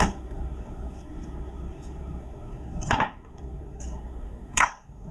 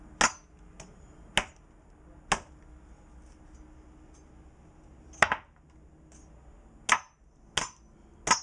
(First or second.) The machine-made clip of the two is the first